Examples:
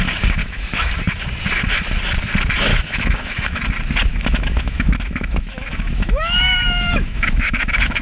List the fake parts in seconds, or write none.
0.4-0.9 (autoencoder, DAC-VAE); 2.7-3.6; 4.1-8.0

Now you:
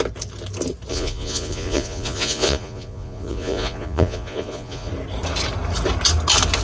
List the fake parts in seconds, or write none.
0.9-4.9 (vocoder, Vocos)

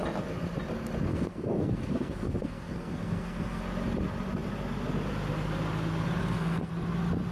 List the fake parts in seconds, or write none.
1.1-3.6 (codec, SNAC); 6.2-6.7